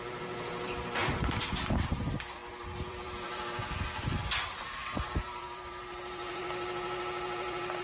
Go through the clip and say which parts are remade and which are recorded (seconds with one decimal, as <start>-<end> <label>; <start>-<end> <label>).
0.0-7.8 remade